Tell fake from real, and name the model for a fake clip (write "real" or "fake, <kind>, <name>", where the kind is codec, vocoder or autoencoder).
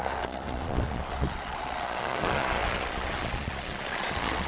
fake, vocoder, Vocos